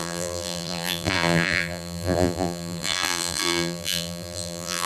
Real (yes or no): no